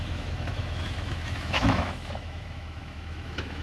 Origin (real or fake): fake